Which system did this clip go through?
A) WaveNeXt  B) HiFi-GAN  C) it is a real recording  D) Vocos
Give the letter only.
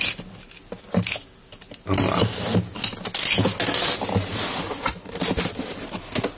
C